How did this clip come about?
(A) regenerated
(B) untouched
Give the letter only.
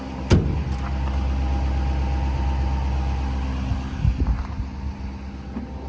B